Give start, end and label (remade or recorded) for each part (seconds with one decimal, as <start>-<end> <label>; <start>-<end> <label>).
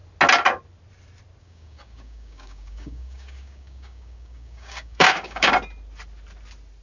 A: 0.0-1.4 recorded; 1.4-5.5 remade; 5.5-6.8 recorded